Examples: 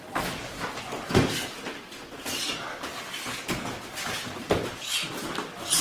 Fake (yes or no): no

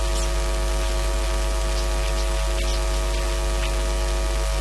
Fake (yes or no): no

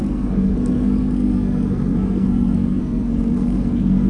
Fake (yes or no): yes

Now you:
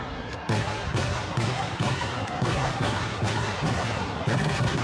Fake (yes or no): yes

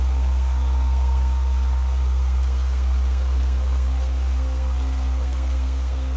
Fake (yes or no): yes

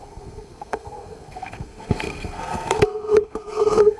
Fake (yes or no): yes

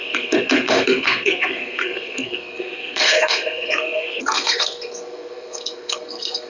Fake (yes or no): yes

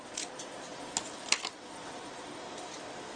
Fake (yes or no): no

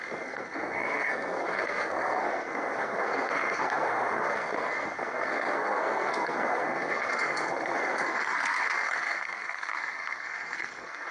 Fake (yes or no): yes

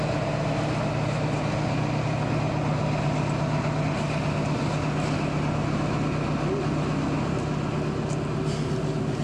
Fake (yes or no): no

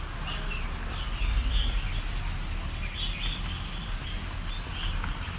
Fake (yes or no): no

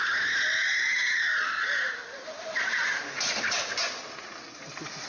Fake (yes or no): no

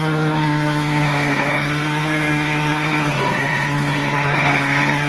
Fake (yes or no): yes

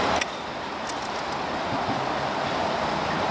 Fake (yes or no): no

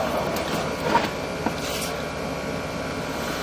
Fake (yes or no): no